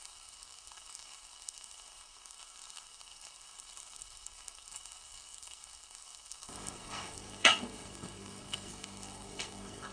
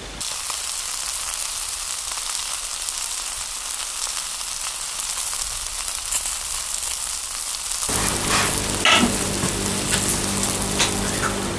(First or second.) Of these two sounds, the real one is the second